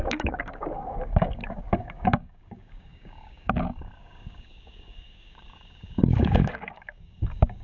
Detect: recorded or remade remade